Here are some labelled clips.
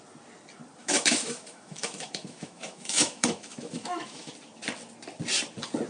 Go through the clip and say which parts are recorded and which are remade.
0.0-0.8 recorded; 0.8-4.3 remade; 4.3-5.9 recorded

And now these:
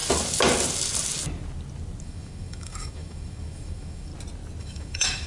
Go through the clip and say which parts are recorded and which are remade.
0.0-2.0 recorded; 2.0-4.1 remade; 4.1-4.6 recorded; 4.6-5.3 remade

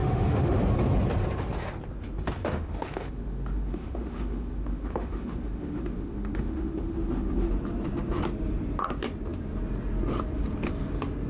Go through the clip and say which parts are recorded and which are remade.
0.0-0.6 remade; 0.6-2.4 recorded; 2.4-7.5 remade; 7.5-11.3 recorded